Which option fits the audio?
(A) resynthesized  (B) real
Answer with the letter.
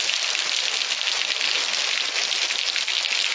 B